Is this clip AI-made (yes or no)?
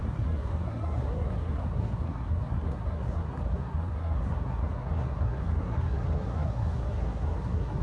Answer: yes